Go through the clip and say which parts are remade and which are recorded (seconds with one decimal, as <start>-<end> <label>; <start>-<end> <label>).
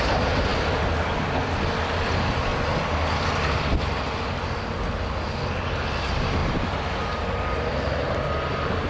0.0-0.5 remade; 0.5-2.1 recorded; 2.1-2.5 remade; 2.5-6.0 recorded; 6.0-8.9 remade